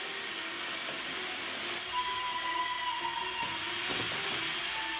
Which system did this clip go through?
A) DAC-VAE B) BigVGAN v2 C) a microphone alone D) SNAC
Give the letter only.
C